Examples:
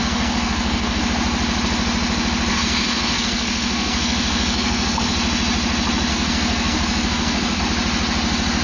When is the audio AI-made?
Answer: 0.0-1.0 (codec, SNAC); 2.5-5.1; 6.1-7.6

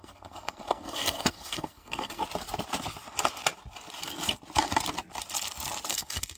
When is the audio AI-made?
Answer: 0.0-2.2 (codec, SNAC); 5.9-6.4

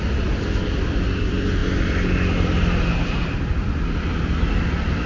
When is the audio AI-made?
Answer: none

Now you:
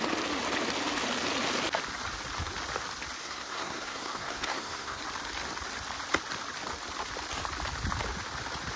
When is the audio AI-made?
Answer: 3.2-5.0 (codec, SNAC)

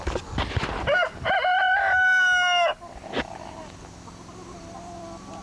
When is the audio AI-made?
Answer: none

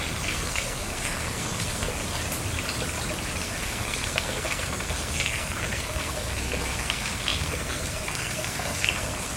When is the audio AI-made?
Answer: 0.0-2.0 (codec, SNAC); 3.4-9.4

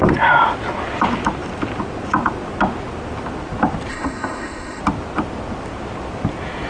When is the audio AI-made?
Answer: 3.9-4.8 (codec, SNAC)